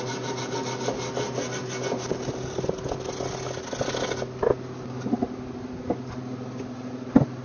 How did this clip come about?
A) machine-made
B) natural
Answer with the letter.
B